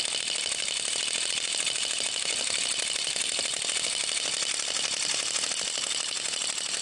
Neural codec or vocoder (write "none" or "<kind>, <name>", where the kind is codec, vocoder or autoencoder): none